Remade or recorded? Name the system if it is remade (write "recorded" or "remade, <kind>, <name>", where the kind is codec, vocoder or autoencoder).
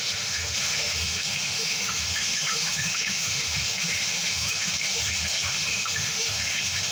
remade, autoencoder, DAC-VAE